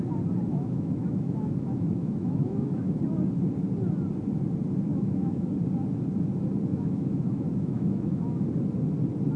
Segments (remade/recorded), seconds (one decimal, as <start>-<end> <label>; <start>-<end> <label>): 0.0-0.5 recorded; 0.5-3.0 remade; 3.0-4.9 recorded; 4.9-5.5 remade; 5.5-6.7 recorded; 6.7-8.4 remade; 8.4-9.4 recorded